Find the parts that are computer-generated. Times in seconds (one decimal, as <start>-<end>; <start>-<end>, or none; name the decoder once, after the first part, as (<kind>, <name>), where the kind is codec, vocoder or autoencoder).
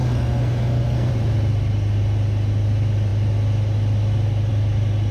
0.0-1.1 (codec, SNAC)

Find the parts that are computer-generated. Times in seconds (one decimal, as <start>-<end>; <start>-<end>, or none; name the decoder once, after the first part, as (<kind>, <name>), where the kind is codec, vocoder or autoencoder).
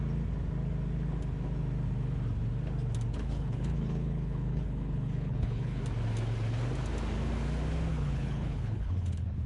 3.1-5.8 (codec, HILCodec); 7.9-9.5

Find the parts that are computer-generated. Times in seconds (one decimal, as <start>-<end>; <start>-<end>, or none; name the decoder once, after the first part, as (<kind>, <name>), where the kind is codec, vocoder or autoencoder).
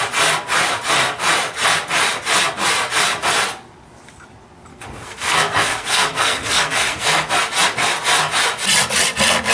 4.7-7.3 (codec, SNAC)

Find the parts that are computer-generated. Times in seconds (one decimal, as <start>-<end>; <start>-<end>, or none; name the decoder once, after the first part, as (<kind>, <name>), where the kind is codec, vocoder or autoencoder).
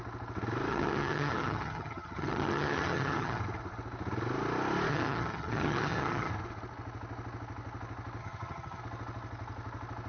0.7-3.4 (vocoder, HiFi-GAN); 4.9-6.3; 8.2-8.8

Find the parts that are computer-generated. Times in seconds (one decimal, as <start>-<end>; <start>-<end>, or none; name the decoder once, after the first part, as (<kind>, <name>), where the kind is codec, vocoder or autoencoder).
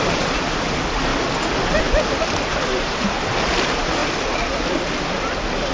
2.7-3.5 (vocoder, BigVGAN v2)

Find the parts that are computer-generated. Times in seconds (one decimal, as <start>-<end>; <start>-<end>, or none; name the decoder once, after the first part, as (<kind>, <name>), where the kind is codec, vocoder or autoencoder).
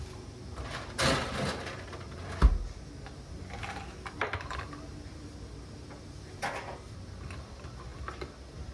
none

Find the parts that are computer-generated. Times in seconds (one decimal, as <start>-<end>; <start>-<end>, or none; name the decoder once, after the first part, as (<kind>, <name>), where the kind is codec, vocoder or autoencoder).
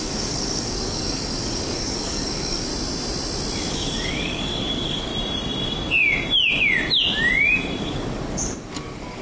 0.0-2.7 (codec, DAC); 3.7-5.1; 7.8-9.2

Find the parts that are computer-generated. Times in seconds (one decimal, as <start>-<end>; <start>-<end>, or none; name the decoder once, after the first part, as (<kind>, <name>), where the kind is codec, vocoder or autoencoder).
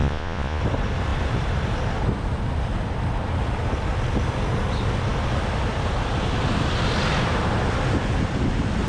0.0-0.6 (vocoder, Vocos)